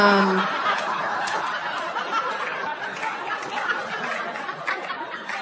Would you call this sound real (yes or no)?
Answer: yes